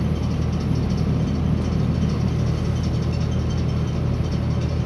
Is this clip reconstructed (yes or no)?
no